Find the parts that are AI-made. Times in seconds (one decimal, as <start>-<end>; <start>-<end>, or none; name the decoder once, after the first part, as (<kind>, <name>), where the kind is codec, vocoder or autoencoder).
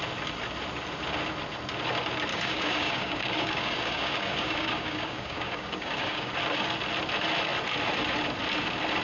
2.3-6.3 (codec, DAC)